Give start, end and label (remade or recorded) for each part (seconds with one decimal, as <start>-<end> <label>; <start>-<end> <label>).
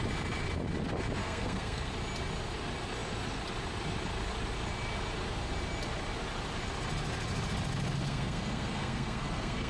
0.0-1.2 recorded; 1.2-1.9 remade; 1.9-8.0 recorded; 8.0-9.7 remade